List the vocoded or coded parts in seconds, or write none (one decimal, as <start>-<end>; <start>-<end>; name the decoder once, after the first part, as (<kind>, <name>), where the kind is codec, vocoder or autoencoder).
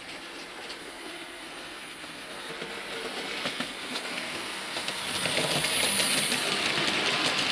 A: 0.8-2.5 (codec, SNAC); 3.5-5.0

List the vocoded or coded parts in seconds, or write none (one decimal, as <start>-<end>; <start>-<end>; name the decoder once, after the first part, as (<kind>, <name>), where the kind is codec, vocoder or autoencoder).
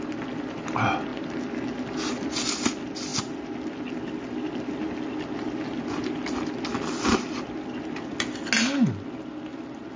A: none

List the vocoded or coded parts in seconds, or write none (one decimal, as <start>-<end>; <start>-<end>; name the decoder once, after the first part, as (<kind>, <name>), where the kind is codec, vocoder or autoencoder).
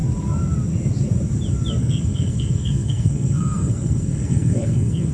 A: 1.8-5.1 (codec, SNAC)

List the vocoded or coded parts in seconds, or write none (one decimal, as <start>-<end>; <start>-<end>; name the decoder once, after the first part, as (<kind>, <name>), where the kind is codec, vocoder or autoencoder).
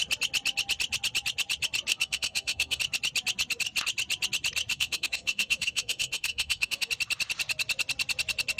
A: 1.9-2.8 (codec, SNAC); 4.7-6.9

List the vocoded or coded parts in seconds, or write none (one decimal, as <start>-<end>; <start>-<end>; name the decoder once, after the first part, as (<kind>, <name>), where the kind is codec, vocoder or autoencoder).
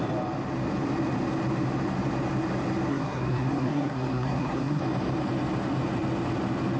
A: 2.9-4.8 (codec, SNAC)